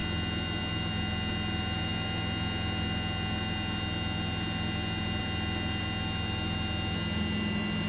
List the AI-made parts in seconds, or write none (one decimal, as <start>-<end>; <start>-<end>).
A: none